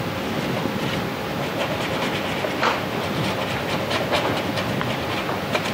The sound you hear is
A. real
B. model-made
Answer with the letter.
A